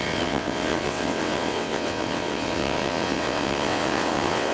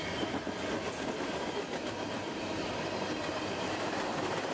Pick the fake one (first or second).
first